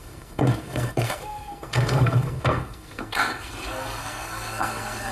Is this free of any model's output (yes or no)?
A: no